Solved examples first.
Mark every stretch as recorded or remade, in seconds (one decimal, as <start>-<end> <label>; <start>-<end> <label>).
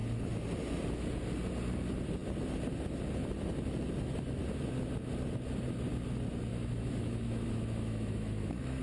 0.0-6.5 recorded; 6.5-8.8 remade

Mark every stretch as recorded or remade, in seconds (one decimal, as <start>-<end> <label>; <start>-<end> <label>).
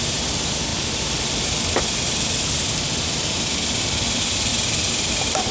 0.0-0.7 remade; 0.7-1.8 recorded; 1.8-4.5 remade; 4.5-5.1 recorded; 5.1-5.5 remade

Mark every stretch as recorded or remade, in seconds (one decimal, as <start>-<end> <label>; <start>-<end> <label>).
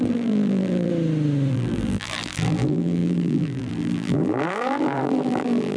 0.0-0.9 remade; 0.9-1.5 recorded; 1.5-5.8 remade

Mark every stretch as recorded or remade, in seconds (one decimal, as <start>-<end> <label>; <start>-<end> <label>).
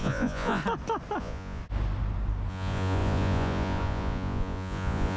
0.0-0.6 remade; 0.6-1.2 recorded; 1.2-1.6 remade; 1.6-2.5 recorded; 2.5-5.2 remade